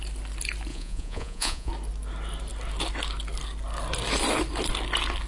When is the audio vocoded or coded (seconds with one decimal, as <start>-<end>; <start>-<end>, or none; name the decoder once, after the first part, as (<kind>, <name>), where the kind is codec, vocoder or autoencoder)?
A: 0.7-1.7 (vocoder, Vocos)